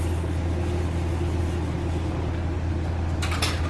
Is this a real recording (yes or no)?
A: yes